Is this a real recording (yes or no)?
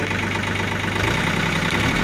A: yes